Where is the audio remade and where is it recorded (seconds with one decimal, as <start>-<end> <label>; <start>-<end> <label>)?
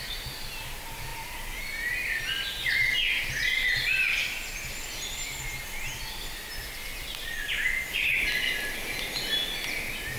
0.0-10.2 recorded